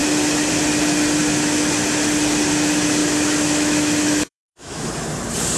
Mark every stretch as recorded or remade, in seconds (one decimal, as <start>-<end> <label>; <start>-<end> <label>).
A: 0.0-3.0 recorded; 3.0-4.9 remade; 4.9-5.6 recorded